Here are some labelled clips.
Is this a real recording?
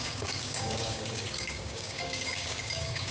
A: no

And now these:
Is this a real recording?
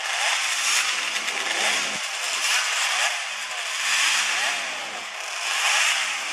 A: yes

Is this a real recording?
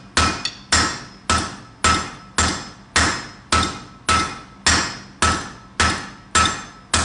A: yes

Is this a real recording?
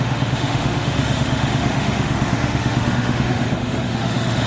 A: no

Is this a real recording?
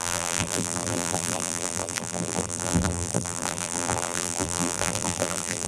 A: no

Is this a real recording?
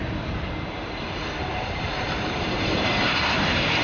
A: no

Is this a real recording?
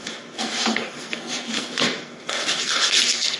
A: no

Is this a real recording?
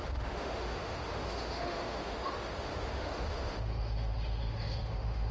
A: no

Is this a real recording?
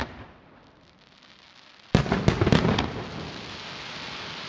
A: yes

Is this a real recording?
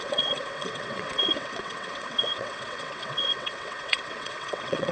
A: no